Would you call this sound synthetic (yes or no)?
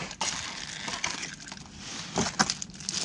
no